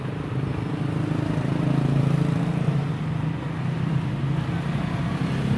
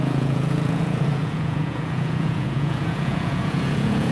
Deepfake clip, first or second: second